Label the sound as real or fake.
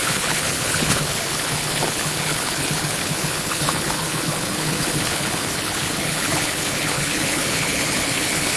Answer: fake